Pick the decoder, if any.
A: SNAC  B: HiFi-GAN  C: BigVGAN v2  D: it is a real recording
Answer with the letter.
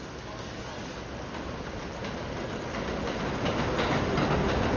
D